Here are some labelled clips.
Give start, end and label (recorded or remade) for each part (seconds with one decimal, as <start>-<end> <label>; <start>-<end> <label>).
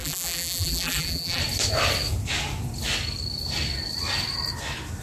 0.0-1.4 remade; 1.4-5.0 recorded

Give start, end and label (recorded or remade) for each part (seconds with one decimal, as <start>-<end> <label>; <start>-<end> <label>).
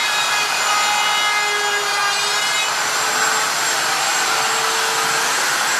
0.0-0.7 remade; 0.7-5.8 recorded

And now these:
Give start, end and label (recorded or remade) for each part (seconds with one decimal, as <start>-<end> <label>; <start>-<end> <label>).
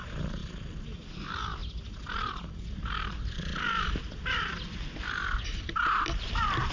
0.0-0.4 remade; 0.4-1.1 recorded; 1.1-1.6 remade; 1.6-2.5 recorded; 2.5-3.5 remade; 3.5-6.7 recorded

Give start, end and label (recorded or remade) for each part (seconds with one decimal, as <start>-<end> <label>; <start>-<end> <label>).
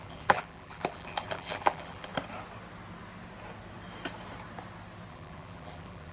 0.0-2.1 remade; 2.1-5.1 recorded; 5.1-6.1 remade